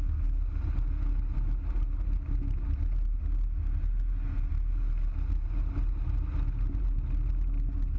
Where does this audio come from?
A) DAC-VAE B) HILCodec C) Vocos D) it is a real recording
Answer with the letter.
D